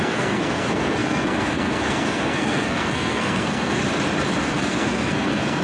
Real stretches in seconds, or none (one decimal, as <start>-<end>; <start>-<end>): 3.8-4.4